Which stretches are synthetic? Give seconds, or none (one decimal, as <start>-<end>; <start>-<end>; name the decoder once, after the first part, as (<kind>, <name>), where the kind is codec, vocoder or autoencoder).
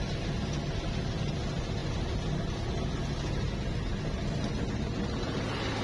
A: none